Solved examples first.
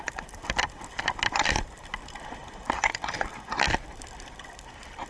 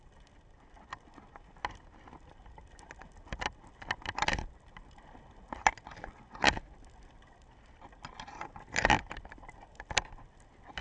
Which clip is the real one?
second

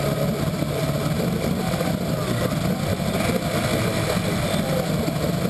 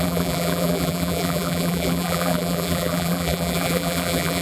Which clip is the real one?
first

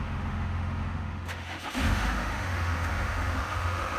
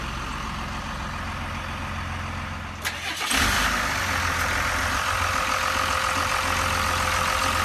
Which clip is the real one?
second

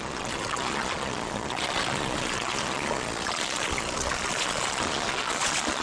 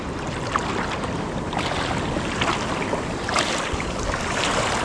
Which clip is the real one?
second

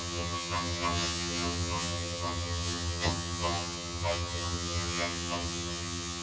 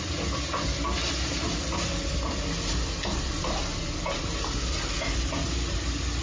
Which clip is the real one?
second